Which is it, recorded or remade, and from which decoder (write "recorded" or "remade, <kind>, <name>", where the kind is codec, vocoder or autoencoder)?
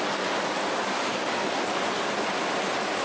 recorded